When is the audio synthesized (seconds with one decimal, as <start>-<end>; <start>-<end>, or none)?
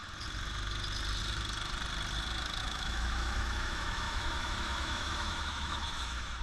2.6-6.4